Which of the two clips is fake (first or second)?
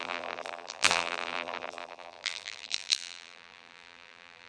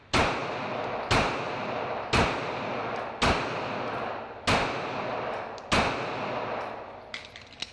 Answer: first